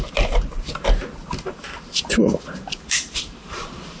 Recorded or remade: remade